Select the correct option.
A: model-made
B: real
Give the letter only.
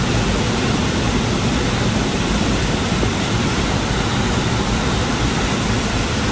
A